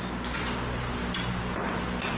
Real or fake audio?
real